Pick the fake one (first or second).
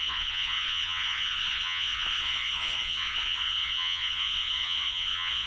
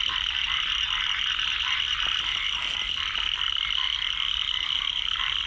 first